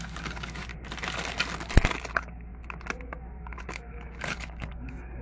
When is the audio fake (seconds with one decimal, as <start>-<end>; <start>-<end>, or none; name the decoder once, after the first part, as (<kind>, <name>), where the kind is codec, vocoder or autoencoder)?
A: 0.0-0.7 (codec, DAC); 2.1-2.5; 3.4-5.2